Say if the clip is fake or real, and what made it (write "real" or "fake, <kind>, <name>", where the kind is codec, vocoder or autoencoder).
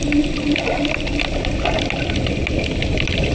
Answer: real